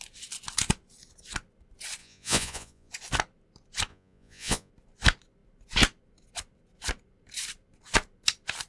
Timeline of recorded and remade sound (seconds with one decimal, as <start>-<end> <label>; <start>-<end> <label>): 0.0-2.0 recorded; 2.0-2.9 remade; 2.9-3.9 recorded; 3.9-4.7 remade; 4.7-8.7 recorded